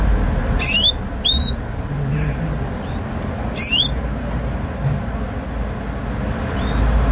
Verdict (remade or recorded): recorded